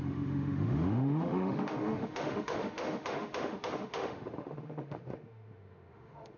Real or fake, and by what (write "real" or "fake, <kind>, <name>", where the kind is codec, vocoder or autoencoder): fake, autoencoder, DAC-VAE